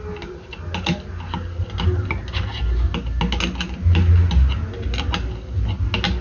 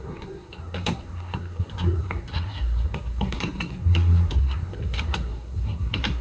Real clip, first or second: first